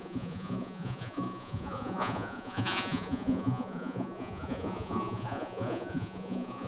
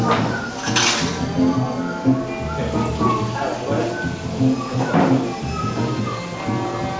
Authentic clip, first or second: second